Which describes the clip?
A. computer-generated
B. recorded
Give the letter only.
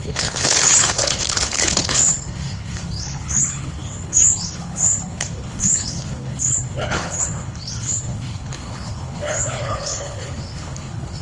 A